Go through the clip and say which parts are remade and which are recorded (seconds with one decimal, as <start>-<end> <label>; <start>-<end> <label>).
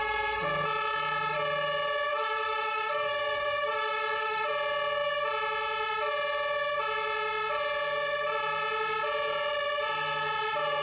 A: 0.0-2.1 recorded; 2.1-4.5 remade; 4.5-10.8 recorded